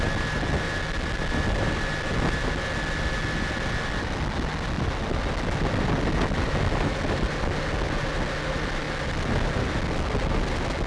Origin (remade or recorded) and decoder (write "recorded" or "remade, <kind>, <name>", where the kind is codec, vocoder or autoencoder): recorded